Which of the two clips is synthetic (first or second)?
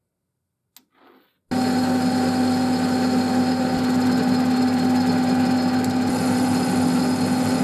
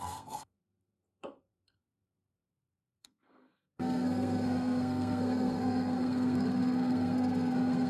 second